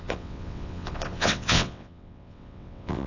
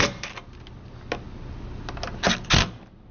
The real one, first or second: second